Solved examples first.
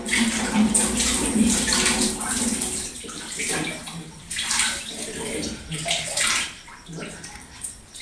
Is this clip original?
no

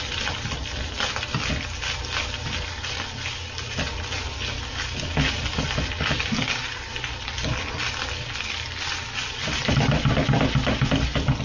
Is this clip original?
yes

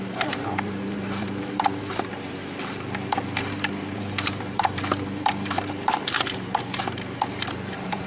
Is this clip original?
no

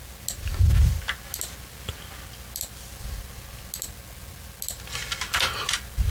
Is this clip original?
yes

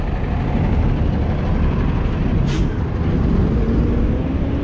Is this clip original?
yes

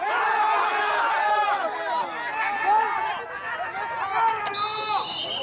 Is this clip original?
yes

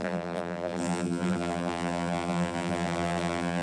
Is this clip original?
no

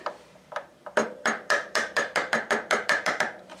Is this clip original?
no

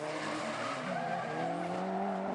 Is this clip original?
no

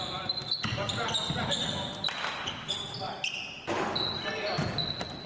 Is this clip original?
yes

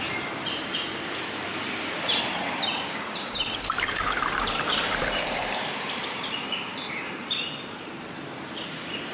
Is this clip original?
no